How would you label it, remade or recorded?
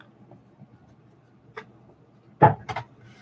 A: recorded